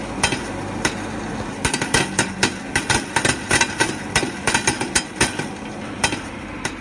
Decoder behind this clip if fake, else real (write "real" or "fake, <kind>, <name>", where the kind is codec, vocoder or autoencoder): real